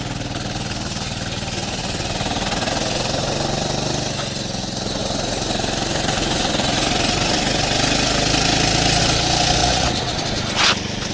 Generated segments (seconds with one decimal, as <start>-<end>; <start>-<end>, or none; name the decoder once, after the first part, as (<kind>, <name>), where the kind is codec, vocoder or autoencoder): 9.6-10.2 (vocoder, Vocos)